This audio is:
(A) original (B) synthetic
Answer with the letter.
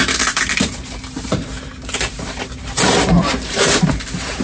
B